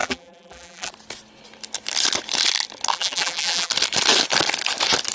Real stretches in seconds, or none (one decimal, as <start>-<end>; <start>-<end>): 0.9-2.9; 3.7-5.1